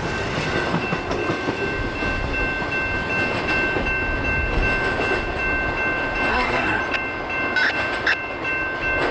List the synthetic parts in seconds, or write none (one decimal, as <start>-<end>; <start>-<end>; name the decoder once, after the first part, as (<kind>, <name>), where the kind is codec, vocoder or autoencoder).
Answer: 6.3-6.8 (codec, SNAC)